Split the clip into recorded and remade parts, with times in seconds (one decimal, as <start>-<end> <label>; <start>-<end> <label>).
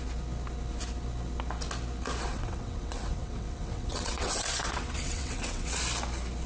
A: 0.0-2.3 recorded; 2.3-5.8 remade; 5.8-6.5 recorded